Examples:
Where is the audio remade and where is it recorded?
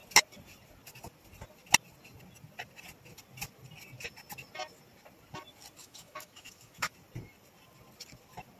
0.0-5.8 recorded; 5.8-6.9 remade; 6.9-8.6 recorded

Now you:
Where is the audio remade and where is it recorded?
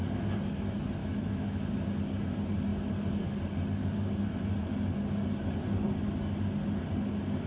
0.0-1.0 recorded; 1.0-1.7 remade; 1.7-7.5 recorded